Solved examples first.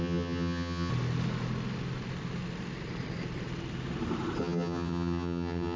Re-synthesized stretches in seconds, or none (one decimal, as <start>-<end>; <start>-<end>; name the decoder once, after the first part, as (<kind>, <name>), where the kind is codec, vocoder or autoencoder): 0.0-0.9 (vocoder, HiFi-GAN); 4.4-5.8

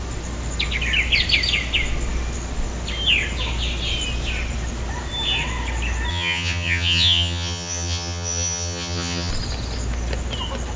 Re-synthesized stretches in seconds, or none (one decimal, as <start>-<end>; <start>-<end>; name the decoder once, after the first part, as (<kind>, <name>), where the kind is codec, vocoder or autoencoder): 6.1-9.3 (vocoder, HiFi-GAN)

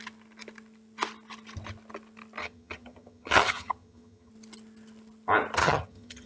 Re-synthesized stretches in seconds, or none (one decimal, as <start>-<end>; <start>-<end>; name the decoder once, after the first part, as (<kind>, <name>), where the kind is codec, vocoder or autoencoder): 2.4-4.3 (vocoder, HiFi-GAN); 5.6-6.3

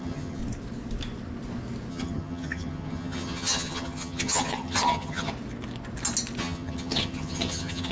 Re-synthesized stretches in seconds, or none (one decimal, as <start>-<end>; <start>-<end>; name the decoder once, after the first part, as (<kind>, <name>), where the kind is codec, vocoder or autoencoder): 0.0-0.4 (vocoder, HiFi-GAN); 1.9-5.3; 6.4-7.9

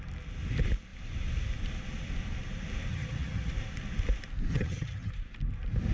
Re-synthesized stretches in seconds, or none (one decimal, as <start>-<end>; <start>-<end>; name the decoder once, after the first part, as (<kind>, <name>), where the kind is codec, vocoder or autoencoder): 2.9-3.5 (vocoder, HiFi-GAN); 4.5-5.1

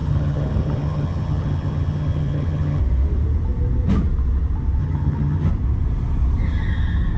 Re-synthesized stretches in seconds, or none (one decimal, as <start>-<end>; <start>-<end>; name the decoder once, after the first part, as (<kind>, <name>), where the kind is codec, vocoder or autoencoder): 0.0-2.8 (vocoder, HiFi-GAN); 4.8-5.5